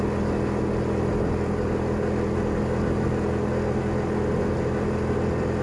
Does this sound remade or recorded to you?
recorded